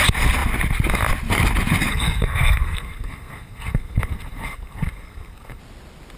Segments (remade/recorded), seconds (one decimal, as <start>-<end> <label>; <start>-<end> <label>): 0.0-1.9 recorded; 1.9-5.6 remade; 5.6-6.2 recorded